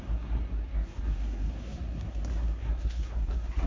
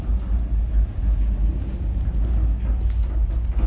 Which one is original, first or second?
second